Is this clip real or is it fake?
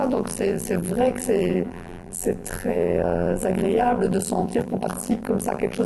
fake